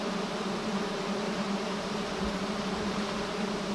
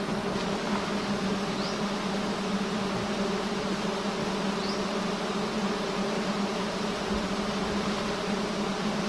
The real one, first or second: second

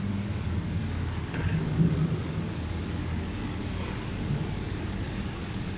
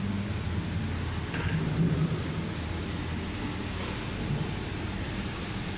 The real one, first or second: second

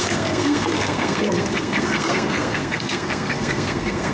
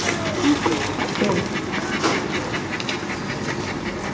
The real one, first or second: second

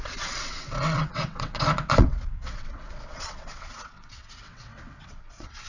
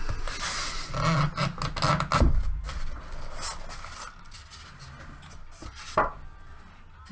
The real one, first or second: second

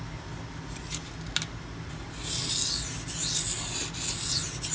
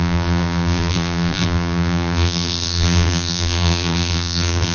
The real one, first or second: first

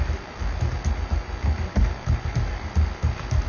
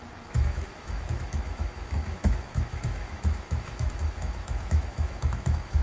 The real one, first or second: first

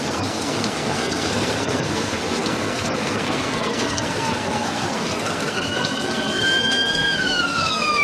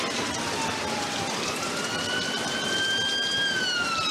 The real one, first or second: second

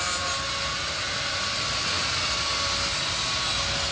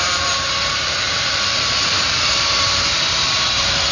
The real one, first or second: first